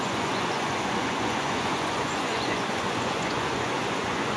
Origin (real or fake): fake